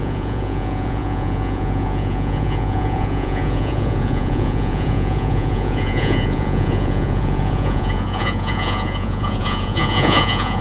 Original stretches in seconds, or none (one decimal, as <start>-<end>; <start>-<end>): none